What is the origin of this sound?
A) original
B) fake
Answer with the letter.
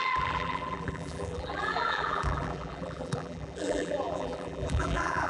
B